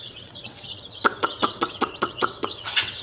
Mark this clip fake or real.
fake